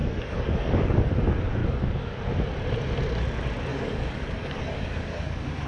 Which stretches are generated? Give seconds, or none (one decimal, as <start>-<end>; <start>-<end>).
0.0-1.1; 1.6-2.2; 3.7-5.7